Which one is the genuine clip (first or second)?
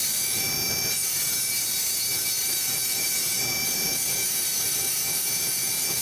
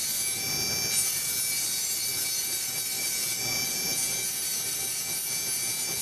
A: second